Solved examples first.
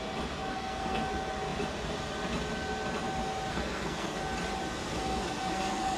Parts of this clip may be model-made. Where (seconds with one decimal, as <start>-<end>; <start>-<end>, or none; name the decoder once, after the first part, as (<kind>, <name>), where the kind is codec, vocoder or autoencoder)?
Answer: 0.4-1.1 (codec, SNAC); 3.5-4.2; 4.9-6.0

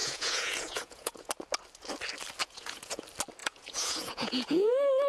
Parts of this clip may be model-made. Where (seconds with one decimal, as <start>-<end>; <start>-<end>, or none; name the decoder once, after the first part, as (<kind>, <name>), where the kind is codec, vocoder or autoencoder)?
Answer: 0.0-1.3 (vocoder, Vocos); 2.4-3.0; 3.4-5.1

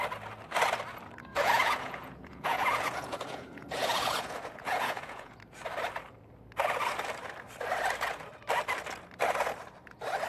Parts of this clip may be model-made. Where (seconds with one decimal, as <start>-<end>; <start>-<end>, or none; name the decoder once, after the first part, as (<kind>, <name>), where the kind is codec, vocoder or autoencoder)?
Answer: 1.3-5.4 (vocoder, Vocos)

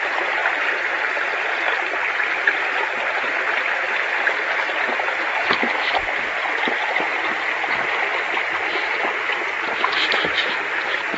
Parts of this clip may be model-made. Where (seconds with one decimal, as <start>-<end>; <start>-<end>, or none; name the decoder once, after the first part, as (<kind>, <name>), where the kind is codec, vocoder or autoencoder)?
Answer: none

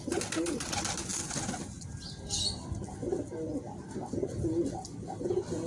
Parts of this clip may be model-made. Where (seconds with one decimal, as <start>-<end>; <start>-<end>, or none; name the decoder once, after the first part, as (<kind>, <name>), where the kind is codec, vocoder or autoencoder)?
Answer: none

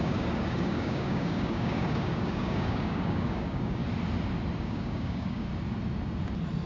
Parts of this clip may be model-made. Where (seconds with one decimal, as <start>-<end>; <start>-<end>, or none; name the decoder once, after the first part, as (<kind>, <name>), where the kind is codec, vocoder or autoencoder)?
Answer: 0.0-3.8 (codec, DAC); 4.6-5.5